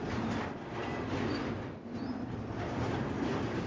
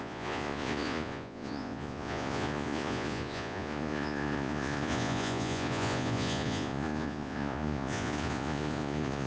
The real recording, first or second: first